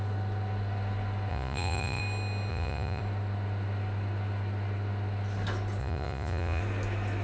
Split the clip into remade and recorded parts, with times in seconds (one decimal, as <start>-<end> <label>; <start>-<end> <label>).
0.0-1.3 recorded; 1.3-2.0 remade; 2.0-2.5 recorded; 2.5-3.0 remade; 3.0-5.8 recorded; 5.8-6.6 remade; 6.6-7.2 recorded